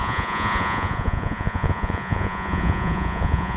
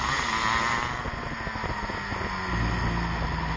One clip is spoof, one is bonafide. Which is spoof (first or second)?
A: first